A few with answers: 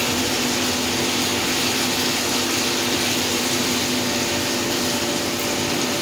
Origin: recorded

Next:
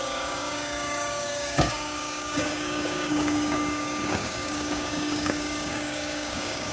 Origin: remade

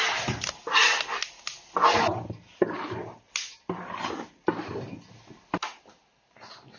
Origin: recorded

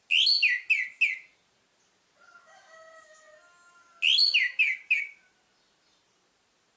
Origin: recorded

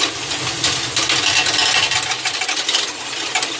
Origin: recorded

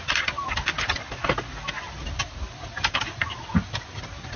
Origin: recorded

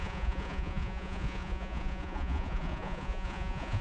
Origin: remade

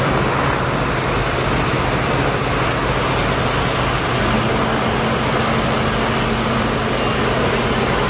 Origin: recorded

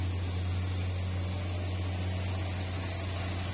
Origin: recorded